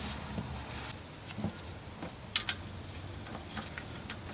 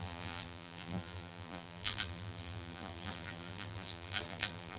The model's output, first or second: second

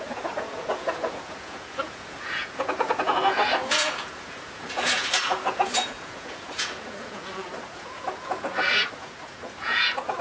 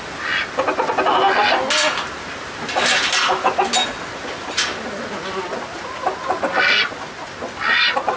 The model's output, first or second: first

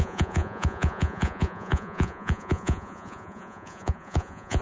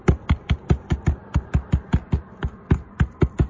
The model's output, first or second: first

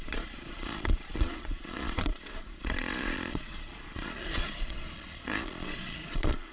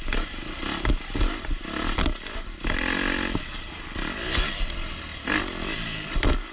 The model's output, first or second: first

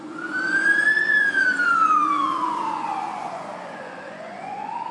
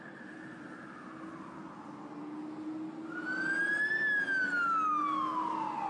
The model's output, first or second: first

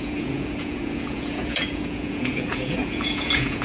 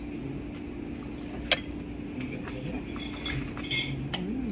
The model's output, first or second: first